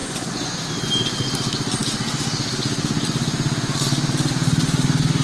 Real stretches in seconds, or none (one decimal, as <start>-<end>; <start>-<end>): 0.6-5.2